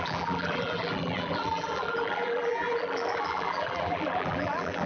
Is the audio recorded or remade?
remade